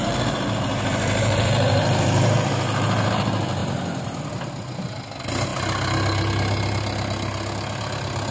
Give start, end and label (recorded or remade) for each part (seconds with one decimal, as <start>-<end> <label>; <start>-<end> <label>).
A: 0.0-3.1 remade; 3.1-3.6 recorded; 3.6-4.3 remade; 4.3-8.3 recorded

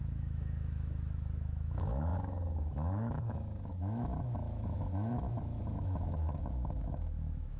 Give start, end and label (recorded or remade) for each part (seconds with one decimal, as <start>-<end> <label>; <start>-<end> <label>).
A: 0.0-7.6 remade

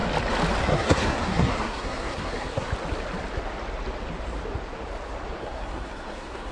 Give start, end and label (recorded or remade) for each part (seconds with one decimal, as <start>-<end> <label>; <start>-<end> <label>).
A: 0.0-0.6 recorded; 0.6-2.7 remade; 2.7-5.4 recorded; 5.4-6.5 remade

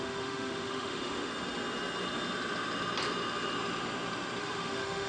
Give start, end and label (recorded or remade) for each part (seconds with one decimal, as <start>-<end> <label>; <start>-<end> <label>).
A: 0.0-1.3 remade; 1.3-4.4 recorded; 4.4-5.1 remade